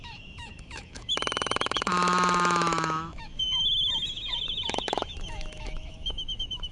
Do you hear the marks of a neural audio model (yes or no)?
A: yes